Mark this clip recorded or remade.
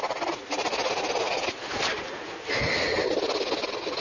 recorded